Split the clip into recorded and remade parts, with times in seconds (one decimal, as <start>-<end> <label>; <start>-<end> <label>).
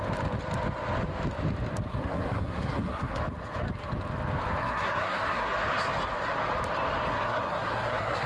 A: 0.0-1.9 recorded; 1.9-3.2 remade; 3.2-4.6 recorded; 4.6-5.5 remade; 5.5-7.1 recorded; 7.1-8.3 remade